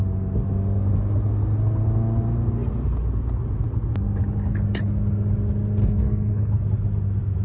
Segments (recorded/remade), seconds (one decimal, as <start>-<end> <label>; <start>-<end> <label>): 0.0-5.8 recorded; 5.8-6.5 remade; 6.5-7.4 recorded